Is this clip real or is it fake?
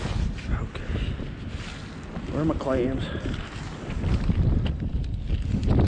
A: real